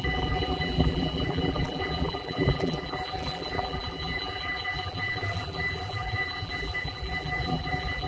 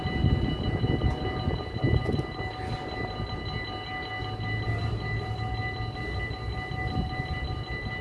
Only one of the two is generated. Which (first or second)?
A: first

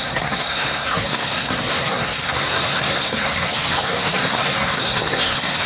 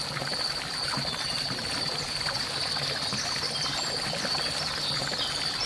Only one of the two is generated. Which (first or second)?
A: first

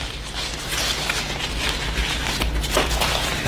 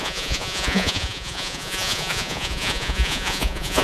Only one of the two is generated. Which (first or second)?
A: second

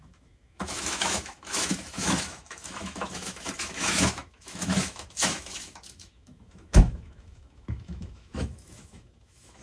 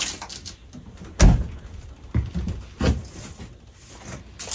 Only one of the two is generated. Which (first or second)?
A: first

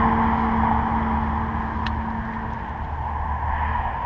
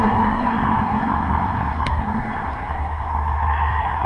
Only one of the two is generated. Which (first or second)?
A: second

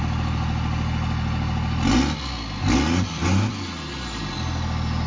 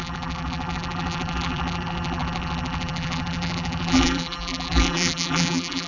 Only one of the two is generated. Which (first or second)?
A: second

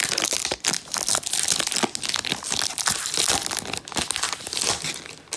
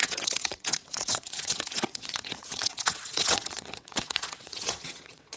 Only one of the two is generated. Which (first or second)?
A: second